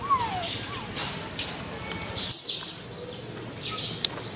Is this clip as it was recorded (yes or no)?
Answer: yes